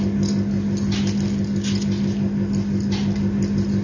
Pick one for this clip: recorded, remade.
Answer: recorded